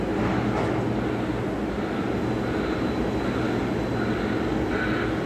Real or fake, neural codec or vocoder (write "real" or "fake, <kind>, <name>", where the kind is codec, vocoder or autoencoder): real